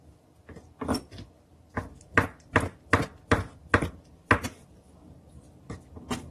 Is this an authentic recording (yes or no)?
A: yes